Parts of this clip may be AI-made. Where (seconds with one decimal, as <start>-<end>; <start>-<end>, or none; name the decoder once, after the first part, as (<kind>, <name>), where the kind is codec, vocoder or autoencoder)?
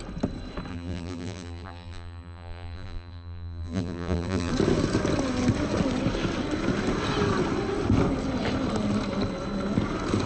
0.7-4.5 (vocoder, BigVGAN v2)